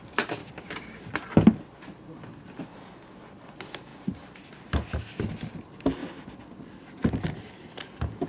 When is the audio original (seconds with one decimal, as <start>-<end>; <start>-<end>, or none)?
0.0-0.4; 1.0-8.3